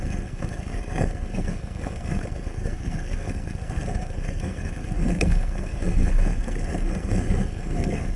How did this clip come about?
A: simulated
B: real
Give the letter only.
A